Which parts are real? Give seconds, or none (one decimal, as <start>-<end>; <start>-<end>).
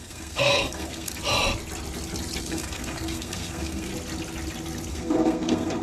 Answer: 1.1-2.4; 3.9-4.9